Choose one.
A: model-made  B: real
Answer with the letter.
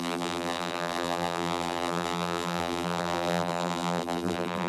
A